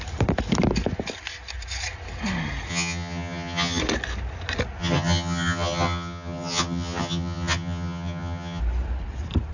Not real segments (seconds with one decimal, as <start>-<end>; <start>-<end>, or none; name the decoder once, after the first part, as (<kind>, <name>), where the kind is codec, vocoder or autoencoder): 2.7-3.8 (vocoder, HiFi-GAN); 4.8-8.6